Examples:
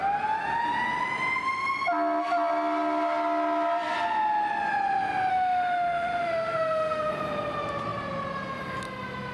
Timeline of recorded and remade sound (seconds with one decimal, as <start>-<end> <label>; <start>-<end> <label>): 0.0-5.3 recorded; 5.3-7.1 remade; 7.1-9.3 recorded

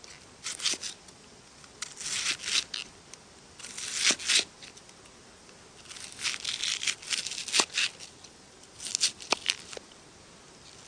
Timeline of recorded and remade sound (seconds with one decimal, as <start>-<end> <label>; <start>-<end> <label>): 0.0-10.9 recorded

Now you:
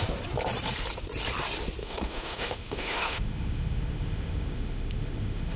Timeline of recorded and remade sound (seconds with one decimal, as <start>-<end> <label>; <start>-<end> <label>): 0.0-1.8 recorded; 1.8-5.6 remade

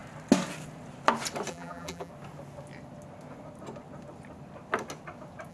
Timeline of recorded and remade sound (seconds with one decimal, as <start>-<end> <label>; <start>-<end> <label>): 0.0-1.5 recorded; 1.5-2.1 remade; 2.1-5.5 recorded

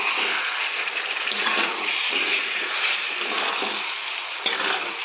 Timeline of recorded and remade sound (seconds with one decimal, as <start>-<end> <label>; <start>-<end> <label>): 0.0-1.4 recorded; 1.4-2.9 remade; 2.9-5.0 recorded

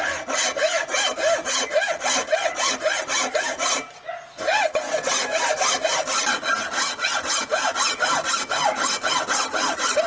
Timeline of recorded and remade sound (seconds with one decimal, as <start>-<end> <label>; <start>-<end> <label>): 0.0-10.1 recorded

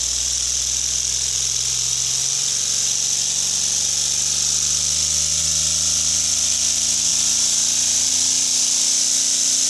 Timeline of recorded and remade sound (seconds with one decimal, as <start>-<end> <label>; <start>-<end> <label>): 0.0-9.7 recorded